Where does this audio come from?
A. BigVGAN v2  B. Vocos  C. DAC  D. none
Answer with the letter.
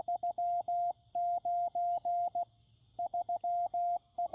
D